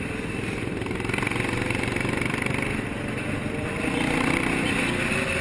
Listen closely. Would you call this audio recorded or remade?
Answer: remade